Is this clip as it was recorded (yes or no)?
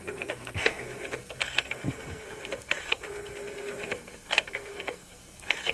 no